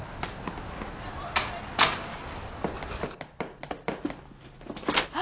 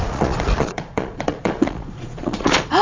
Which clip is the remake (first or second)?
second